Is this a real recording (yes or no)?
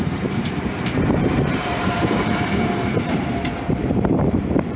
no